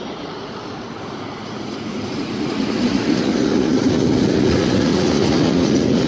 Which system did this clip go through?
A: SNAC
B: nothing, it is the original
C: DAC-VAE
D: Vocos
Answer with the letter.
D